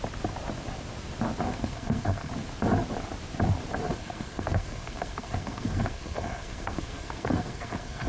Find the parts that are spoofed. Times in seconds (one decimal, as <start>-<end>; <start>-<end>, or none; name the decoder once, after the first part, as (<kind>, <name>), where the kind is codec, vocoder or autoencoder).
1.5-2.3 (codec, SNAC); 3.9-8.1